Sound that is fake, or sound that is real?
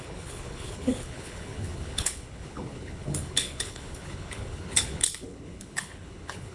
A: fake